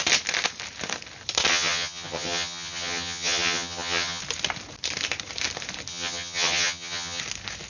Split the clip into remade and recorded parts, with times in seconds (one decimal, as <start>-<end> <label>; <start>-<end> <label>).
0.0-1.5 recorded; 1.5-4.2 remade; 4.2-5.9 recorded; 5.9-7.2 remade; 7.2-7.7 recorded